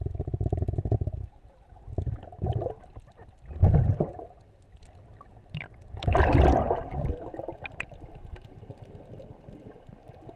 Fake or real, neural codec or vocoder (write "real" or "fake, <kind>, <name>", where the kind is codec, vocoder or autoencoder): real